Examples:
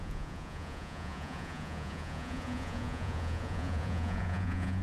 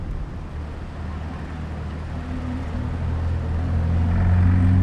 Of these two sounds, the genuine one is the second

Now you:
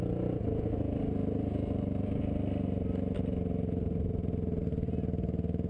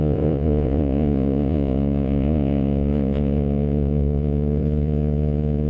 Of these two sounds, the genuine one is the first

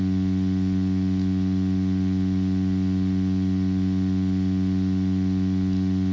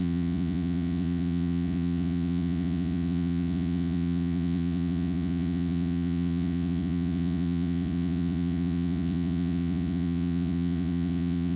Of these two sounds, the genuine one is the first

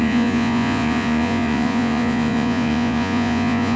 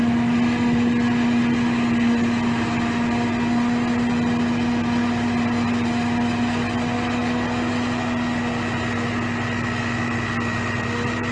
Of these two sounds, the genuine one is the second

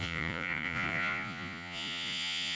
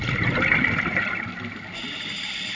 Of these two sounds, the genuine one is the second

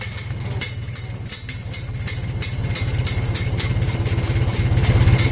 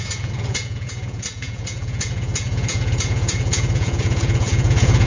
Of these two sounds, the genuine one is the first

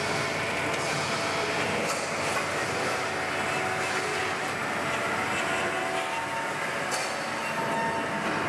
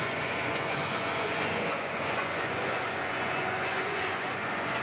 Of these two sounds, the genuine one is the first